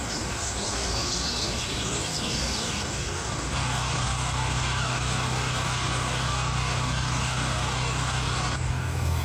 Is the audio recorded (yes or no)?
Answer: no